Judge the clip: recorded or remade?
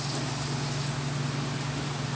recorded